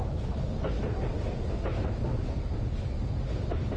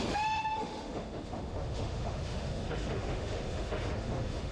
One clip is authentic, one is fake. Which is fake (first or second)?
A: second